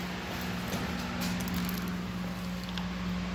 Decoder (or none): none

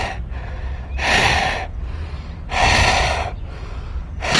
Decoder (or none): none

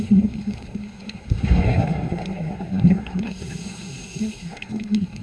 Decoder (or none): codec, SNAC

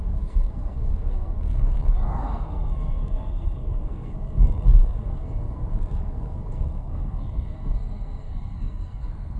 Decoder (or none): codec, SNAC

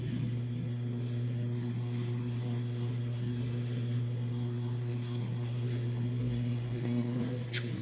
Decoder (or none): codec, SNAC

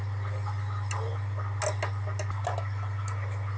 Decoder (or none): none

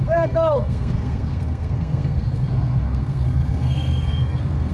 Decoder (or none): codec, SNAC